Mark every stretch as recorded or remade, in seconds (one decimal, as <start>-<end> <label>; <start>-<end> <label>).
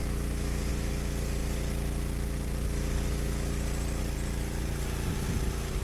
0.0-0.7 remade; 0.7-5.8 recorded